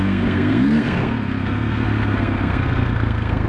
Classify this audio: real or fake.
fake